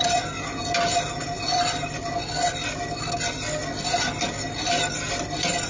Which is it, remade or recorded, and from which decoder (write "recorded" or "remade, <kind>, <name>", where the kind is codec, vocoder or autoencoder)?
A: recorded